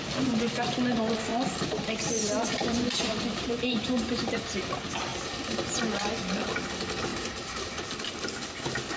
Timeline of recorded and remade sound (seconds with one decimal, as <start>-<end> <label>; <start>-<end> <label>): 0.0-2.5 recorded; 2.5-4.6 remade; 4.6-5.1 recorded; 5.1-6.1 remade; 6.1-7.1 recorded; 7.1-7.7 remade; 7.7-9.0 recorded